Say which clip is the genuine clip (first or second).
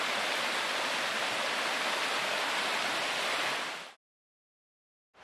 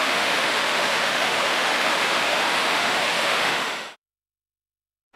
first